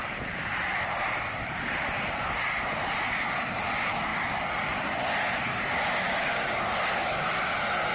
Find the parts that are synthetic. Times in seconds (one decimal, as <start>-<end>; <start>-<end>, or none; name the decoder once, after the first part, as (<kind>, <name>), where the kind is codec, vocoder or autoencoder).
none